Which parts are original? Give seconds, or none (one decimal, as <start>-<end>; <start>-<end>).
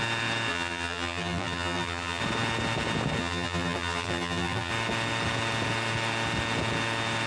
0.0-0.5; 2.2-3.2; 4.7-7.3